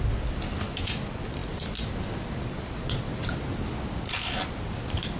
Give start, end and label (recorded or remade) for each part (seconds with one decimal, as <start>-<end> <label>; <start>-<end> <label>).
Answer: 0.0-5.2 recorded